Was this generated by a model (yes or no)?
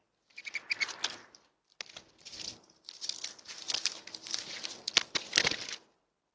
no